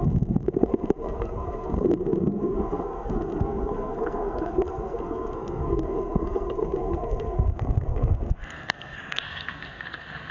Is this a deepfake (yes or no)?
yes